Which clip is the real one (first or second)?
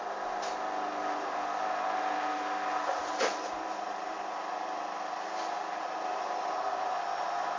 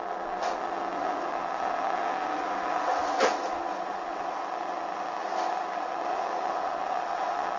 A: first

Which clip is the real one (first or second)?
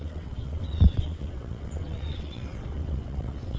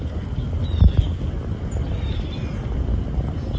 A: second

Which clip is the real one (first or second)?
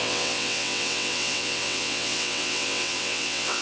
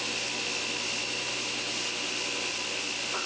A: second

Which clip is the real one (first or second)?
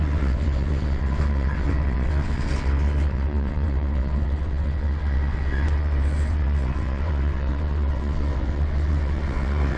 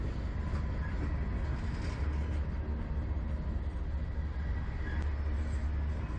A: second